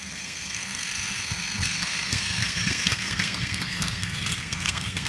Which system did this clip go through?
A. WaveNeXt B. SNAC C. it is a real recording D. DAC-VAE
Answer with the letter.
B